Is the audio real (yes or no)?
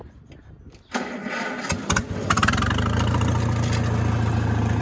yes